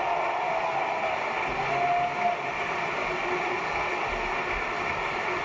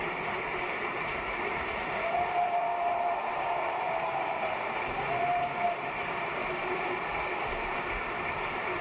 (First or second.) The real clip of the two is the first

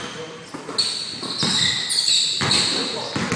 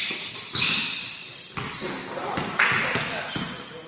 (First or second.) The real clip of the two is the first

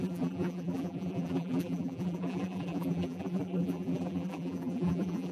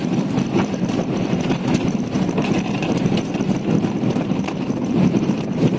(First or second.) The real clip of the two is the second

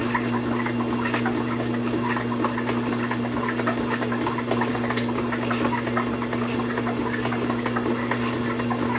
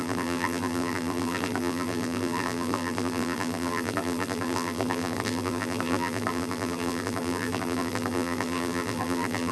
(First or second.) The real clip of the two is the first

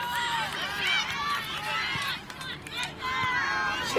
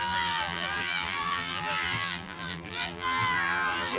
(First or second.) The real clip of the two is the first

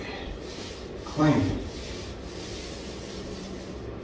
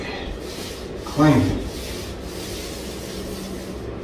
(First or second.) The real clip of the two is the second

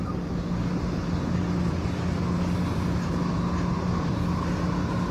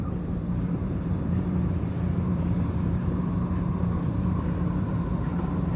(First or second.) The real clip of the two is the first